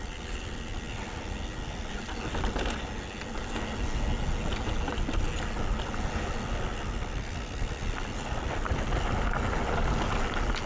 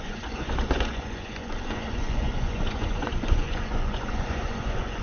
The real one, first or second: first